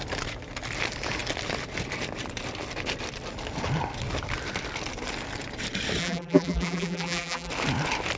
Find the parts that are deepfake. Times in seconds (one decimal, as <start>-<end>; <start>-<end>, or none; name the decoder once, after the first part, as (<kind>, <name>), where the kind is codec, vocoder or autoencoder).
6.0-7.5 (vocoder, BigVGAN v2)